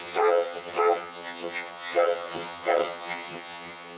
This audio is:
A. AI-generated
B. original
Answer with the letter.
A